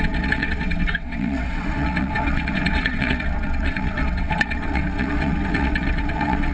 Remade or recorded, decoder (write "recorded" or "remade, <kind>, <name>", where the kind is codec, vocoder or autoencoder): remade, vocoder, WaveNeXt